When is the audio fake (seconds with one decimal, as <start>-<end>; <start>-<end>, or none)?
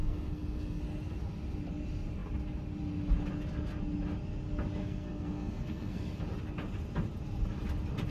0.0-0.8; 4.8-6.2